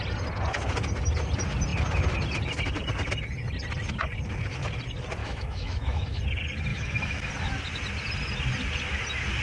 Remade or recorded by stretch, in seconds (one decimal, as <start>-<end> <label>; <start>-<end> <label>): 0.0-5.2 recorded; 5.2-6.2 remade; 6.2-6.7 recorded; 6.7-7.3 remade; 7.3-9.4 recorded